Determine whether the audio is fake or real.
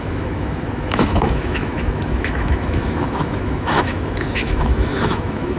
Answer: fake